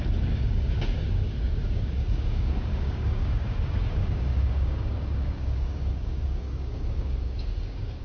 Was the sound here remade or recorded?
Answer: remade